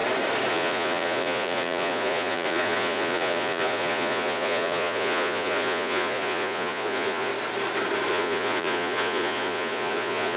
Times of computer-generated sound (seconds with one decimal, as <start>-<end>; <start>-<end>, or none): 0.5-7.3; 8.1-10.4